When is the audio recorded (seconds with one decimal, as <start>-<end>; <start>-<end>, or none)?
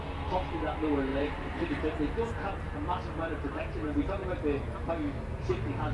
0.0-1.1; 1.8-5.9